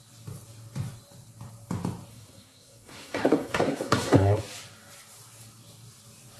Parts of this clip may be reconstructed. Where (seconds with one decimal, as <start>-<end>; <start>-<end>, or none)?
2.1-4.4